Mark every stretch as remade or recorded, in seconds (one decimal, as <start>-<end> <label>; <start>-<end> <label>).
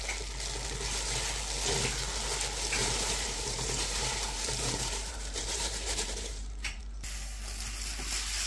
0.0-2.8 recorded; 2.8-6.8 remade; 6.8-8.5 recorded